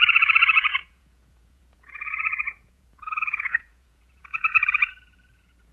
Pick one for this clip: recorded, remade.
remade